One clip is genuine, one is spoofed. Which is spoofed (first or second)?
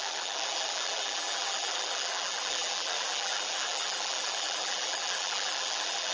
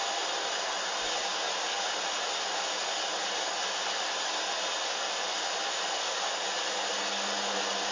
first